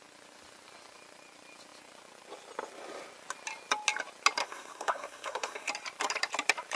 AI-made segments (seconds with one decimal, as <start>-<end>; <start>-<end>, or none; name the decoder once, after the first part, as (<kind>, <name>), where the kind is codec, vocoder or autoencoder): 4.4-5.7 (codec, SNAC)